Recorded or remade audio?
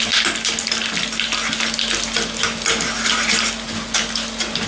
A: recorded